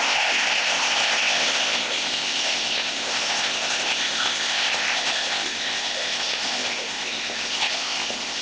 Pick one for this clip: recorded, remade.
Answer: remade